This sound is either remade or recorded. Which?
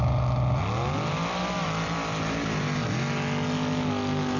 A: recorded